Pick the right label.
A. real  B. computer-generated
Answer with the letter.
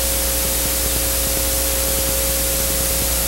A